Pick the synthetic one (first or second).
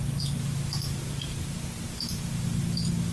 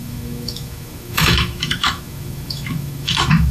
second